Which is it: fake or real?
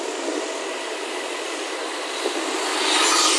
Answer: real